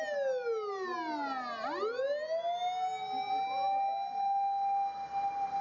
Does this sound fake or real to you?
real